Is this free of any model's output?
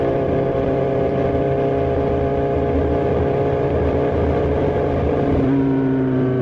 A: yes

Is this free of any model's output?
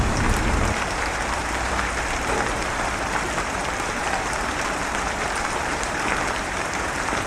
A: no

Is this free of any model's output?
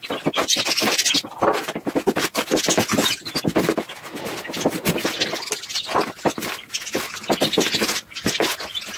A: yes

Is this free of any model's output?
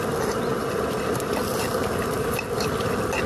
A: yes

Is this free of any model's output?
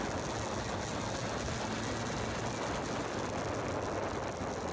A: yes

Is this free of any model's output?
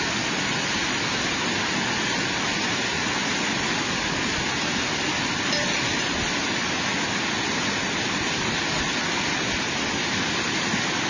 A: yes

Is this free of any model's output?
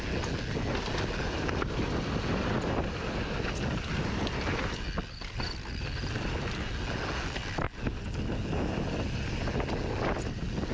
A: yes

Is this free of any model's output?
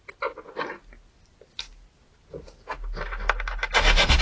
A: yes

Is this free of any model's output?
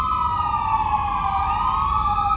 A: yes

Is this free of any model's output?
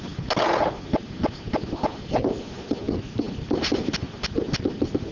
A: yes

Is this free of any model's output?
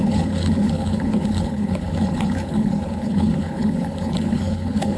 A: no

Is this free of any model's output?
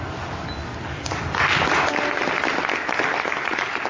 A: yes